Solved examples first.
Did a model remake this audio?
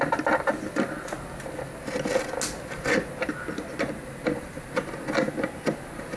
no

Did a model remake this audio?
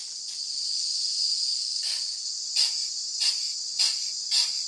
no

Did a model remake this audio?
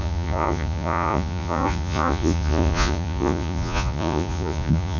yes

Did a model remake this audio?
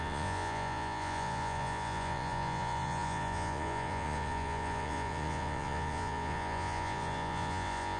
yes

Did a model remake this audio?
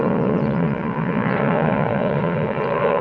yes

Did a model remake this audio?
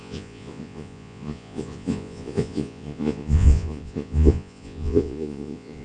yes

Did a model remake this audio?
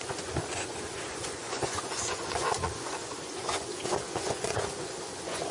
yes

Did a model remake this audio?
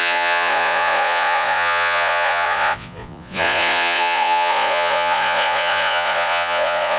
yes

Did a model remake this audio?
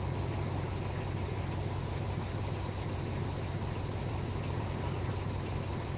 no